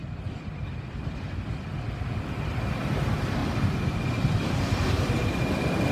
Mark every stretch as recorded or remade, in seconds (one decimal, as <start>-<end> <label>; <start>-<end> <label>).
0.0-3.4 recorded; 3.4-5.1 remade; 5.1-5.9 recorded